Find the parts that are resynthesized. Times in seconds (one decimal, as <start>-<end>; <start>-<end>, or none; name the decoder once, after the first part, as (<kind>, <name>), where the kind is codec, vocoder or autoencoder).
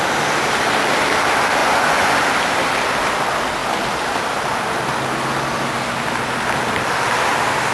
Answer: 1.6-2.2 (vocoder, Vocos)